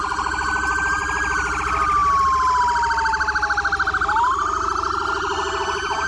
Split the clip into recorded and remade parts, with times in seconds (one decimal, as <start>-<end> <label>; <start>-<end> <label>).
0.0-6.1 recorded